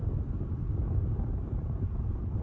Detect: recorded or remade recorded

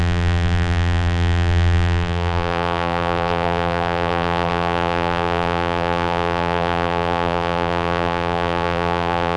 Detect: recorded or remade remade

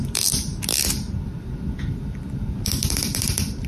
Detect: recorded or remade remade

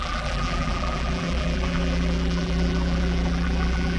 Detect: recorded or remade remade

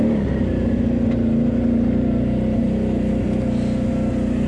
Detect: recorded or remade recorded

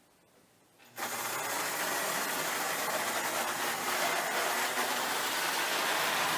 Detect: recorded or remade recorded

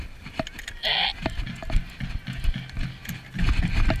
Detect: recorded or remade recorded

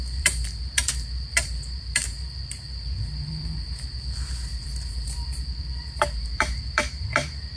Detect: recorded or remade remade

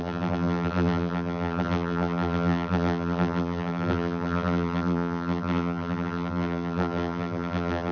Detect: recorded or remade remade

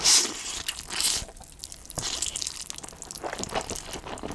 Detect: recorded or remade recorded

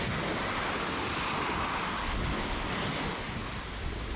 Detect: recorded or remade recorded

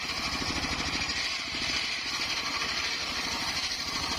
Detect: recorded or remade remade